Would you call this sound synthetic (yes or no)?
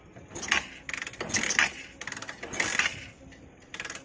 no